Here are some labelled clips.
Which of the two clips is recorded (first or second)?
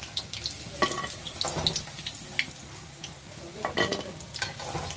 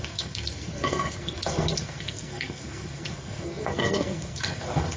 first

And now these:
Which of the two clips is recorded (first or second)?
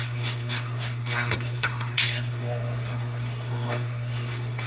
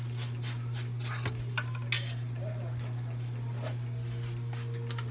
second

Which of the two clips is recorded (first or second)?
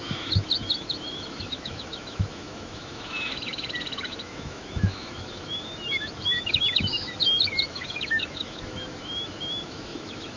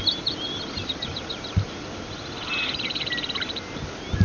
second